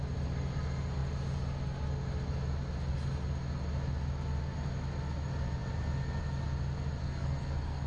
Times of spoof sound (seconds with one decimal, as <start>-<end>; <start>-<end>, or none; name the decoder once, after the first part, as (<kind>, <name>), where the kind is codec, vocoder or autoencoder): 7.0-7.9 (codec, SNAC)